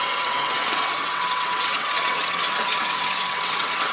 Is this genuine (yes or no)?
no